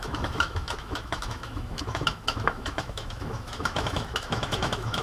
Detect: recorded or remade remade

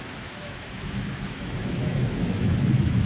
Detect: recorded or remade remade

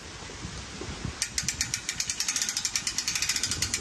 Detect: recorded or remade recorded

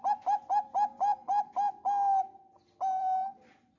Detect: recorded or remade recorded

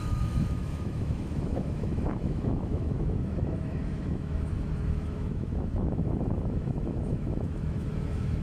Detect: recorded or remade remade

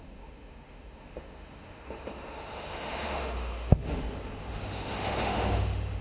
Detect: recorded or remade remade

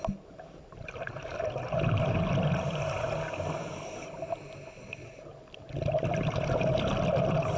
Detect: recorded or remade recorded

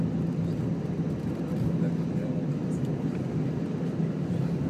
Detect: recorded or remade recorded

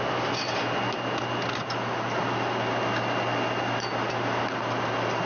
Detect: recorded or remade recorded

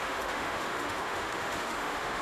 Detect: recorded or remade remade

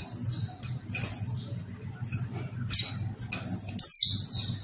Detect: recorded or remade recorded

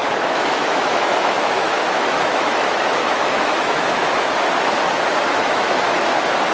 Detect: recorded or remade remade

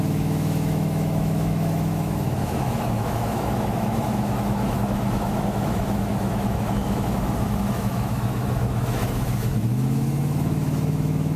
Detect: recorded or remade remade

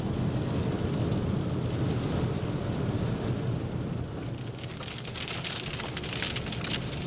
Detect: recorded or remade recorded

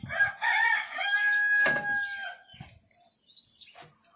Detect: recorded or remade recorded